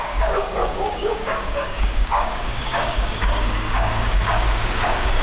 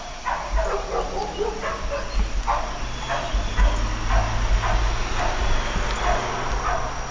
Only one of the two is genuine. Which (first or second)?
second